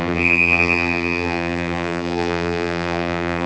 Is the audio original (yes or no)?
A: no